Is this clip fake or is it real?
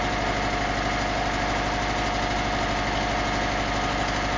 real